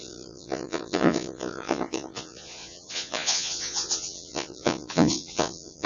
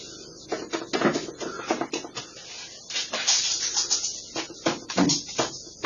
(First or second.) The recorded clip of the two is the second